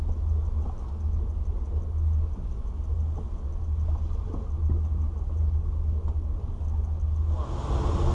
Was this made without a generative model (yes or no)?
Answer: yes